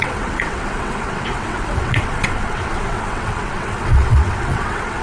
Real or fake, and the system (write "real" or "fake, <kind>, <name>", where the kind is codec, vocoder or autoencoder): fake, vocoder, WaveNeXt